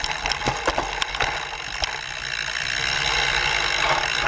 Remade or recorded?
recorded